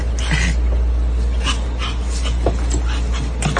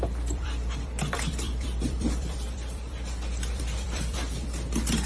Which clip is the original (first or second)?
first